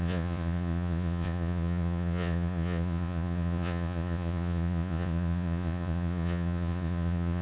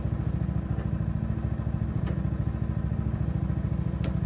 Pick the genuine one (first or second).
second